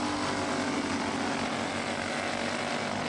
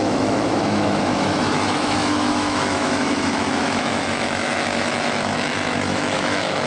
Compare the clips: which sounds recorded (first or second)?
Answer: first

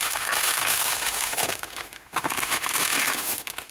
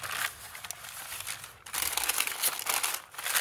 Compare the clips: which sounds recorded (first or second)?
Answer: second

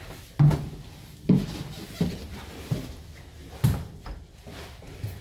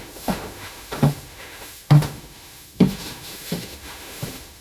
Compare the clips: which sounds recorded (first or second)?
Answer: first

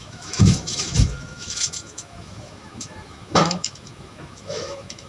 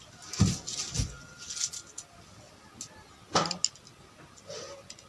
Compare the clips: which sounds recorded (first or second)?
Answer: second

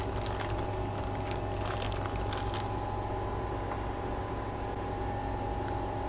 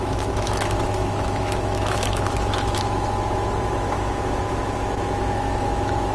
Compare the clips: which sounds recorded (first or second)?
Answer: first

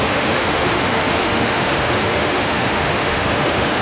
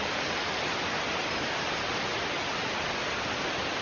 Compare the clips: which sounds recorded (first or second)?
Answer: second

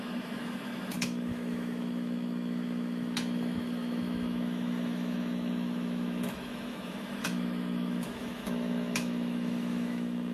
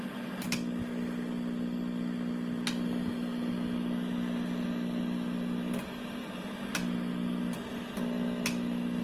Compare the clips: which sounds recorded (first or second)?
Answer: second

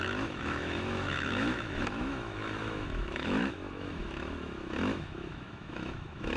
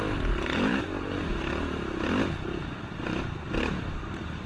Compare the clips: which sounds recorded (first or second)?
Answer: second